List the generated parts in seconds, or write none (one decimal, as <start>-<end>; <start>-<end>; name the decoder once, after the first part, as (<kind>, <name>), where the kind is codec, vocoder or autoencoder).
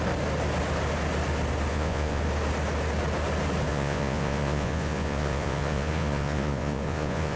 1.7-2.2 (vocoder, Vocos); 3.7-7.4